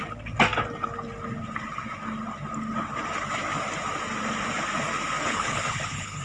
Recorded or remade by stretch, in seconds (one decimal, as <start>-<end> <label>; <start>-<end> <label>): 0.0-5.2 recorded; 5.2-6.2 remade